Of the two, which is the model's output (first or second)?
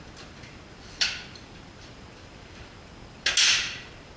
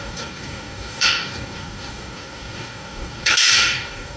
second